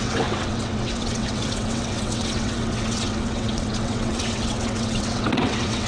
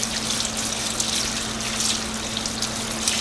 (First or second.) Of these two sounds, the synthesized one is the first